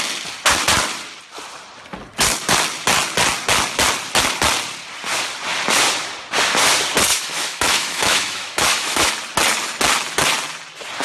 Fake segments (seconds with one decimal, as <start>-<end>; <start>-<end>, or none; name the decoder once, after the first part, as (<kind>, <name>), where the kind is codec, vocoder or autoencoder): 7.1-9.1 (autoencoder, DAC-VAE)